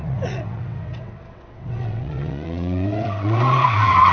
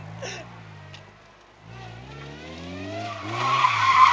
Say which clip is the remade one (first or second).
first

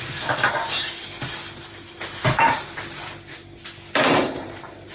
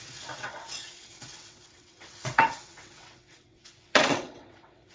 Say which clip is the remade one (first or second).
second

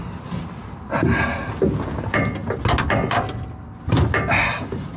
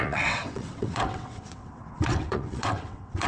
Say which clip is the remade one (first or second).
second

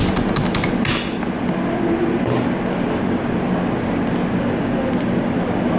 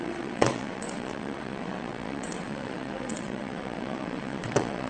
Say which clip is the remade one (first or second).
second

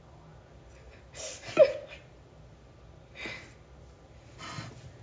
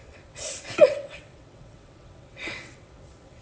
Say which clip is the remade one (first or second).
second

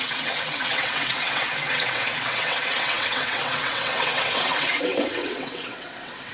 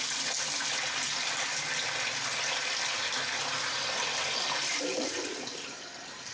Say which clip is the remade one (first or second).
first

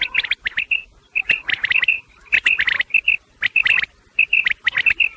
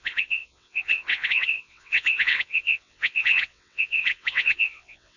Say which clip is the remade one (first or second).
second